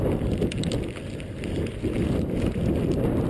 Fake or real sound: real